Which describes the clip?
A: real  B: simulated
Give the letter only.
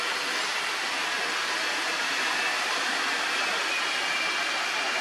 A